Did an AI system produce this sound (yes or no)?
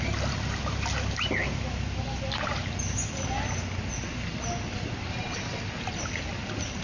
no